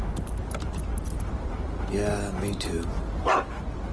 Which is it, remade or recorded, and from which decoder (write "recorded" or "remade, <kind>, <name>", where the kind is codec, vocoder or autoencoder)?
recorded